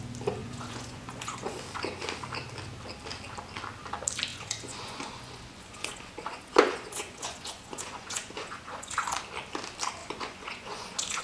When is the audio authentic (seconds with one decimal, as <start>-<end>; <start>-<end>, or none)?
0.0-0.4; 1.6-4.3; 9.2-10.0